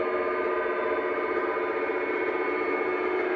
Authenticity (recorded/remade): recorded